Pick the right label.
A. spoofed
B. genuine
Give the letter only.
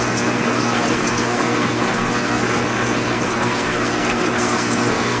A